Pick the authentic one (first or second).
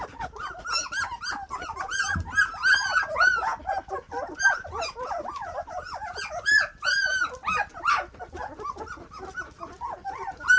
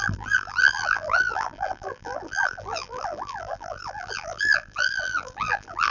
first